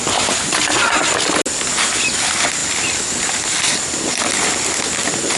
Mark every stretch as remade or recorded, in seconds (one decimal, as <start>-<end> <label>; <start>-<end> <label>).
0.0-5.4 recorded